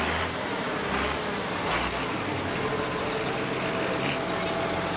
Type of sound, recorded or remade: recorded